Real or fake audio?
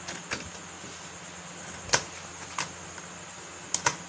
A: real